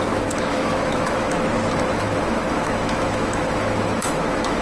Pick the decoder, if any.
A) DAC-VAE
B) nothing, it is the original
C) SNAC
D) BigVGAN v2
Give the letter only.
A